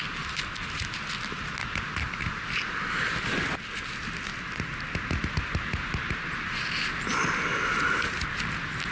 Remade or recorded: recorded